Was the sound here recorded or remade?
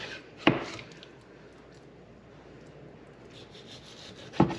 recorded